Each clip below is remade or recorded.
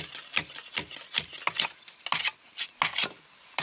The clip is recorded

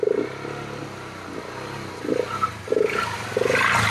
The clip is recorded